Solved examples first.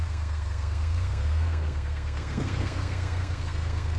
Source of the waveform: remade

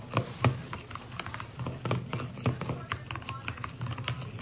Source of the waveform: recorded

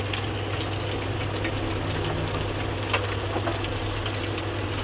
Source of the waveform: recorded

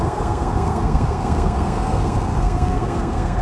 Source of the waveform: remade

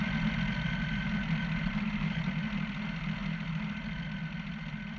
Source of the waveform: recorded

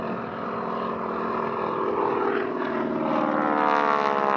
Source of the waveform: recorded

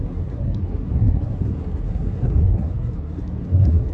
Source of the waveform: remade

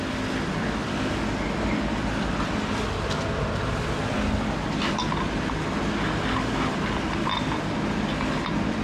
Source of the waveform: recorded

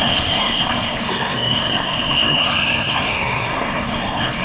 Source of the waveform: remade